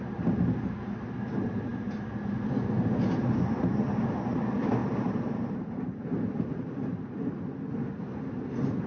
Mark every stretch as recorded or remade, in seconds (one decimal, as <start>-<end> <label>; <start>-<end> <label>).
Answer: 0.0-8.9 recorded

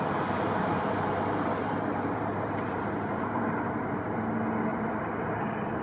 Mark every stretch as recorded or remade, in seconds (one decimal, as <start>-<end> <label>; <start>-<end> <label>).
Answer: 0.0-0.7 recorded; 0.7-4.2 remade; 4.2-4.7 recorded; 4.7-5.8 remade

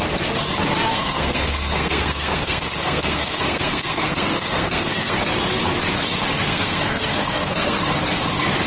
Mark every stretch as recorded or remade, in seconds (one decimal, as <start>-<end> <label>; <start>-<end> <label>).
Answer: 0.0-0.9 recorded; 0.9-5.2 remade; 5.2-6.5 recorded; 6.5-7.8 remade; 7.8-8.7 recorded

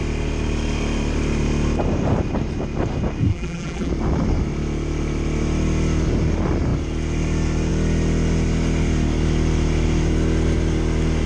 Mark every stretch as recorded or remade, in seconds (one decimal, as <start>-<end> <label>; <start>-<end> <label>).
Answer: 0.0-3.3 recorded; 3.3-3.9 remade; 3.9-11.3 recorded

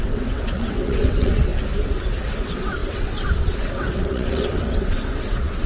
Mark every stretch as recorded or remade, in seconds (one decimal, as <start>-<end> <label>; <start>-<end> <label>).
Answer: 0.0-1.5 remade; 1.5-2.3 recorded; 2.3-5.7 remade

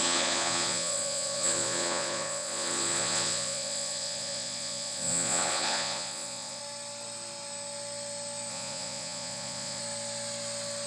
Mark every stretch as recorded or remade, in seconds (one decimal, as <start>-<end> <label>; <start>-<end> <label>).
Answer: 0.0-6.6 remade; 6.6-8.5 recorded; 8.5-9.8 remade; 9.8-10.9 recorded